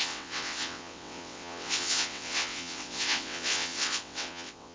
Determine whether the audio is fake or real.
fake